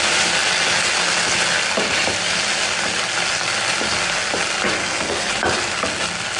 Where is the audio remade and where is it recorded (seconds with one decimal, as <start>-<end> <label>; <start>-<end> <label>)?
0.0-4.8 recorded; 4.8-5.3 remade; 5.3-6.4 recorded

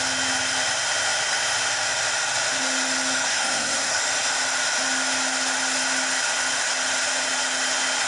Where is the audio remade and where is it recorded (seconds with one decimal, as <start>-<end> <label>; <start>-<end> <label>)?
0.0-3.3 recorded; 3.3-4.0 remade; 4.0-8.1 recorded

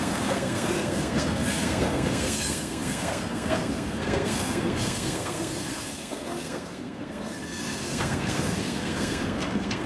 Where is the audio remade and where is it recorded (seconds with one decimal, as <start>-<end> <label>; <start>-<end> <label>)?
0.0-9.9 remade

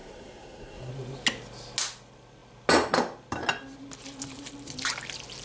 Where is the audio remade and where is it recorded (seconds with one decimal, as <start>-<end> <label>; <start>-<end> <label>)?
0.0-0.9 remade; 0.9-5.4 recorded

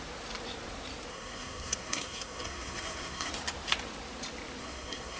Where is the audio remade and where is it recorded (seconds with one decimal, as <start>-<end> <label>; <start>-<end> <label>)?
0.0-1.1 recorded; 1.1-3.3 remade; 3.3-4.6 recorded; 4.6-5.2 remade

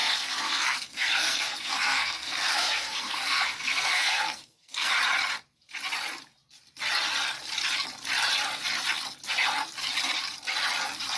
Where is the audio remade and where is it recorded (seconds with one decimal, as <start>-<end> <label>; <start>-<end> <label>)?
0.0-4.9 remade; 4.9-11.2 recorded